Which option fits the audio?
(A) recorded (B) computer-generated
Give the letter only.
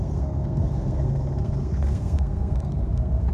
B